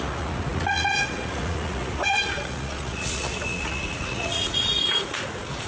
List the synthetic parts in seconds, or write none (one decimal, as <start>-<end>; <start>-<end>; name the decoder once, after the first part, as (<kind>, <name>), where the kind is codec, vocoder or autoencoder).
0.0-5.7 (vocoder, Vocos)